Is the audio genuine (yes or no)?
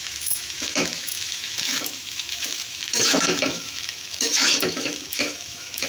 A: no